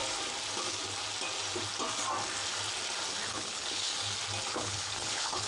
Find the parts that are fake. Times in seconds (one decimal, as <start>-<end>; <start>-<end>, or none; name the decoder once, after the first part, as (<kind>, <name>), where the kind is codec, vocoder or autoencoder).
3.3-3.9 (codec, HILCodec); 4.5-5.5